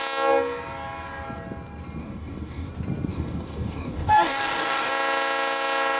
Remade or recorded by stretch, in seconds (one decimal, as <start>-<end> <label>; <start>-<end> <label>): 0.0-2.0 recorded; 2.0-2.7 remade; 2.7-3.1 recorded; 3.1-4.9 remade; 4.9-6.0 recorded